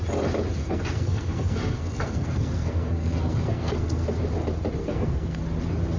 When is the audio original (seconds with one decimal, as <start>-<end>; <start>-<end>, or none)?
0.0-0.6; 4.2-4.8; 5.4-6.0